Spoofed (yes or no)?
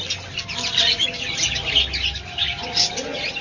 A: no